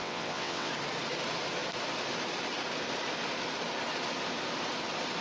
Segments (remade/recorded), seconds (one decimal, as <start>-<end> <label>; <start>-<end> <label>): 0.0-0.7 remade; 0.7-5.2 recorded